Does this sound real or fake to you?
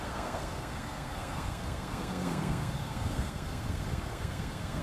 fake